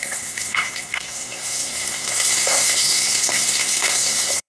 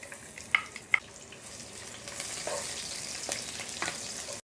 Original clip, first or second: second